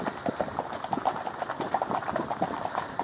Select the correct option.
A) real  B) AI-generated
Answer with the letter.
A